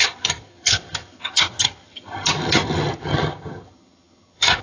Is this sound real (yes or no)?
no